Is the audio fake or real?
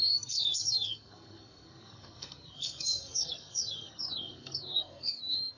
fake